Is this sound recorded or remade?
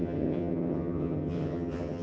remade